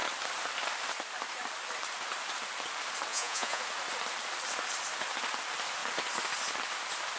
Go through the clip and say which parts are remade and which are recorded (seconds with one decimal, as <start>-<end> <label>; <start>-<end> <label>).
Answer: 0.0-3.1 recorded; 3.1-3.6 remade; 3.6-7.2 recorded